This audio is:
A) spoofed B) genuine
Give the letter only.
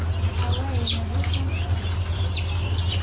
B